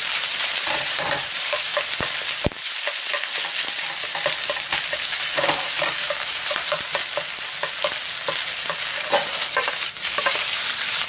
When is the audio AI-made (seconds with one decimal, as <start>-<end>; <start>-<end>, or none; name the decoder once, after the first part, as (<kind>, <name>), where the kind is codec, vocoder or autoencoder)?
0.0-1.7 (vocoder, BigVGAN v2); 5.4-7.1; 9.2-11.1